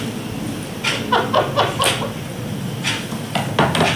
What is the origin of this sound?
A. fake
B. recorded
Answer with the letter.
B